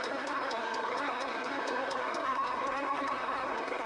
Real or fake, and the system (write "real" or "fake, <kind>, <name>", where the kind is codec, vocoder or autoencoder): fake, codec, SNAC